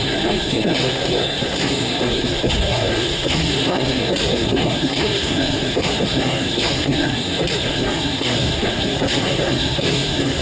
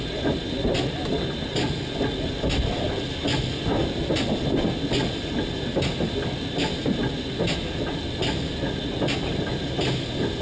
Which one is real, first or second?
second